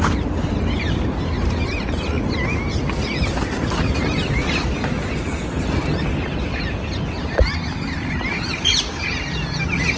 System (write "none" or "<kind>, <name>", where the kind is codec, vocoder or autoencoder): none